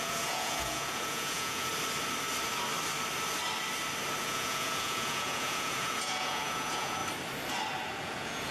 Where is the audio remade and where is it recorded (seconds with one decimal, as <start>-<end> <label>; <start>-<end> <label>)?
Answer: 0.0-1.7 remade; 1.7-4.2 recorded; 4.2-7.0 remade; 7.0-8.0 recorded; 8.0-8.5 remade